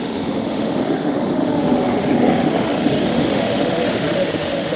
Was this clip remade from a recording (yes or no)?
yes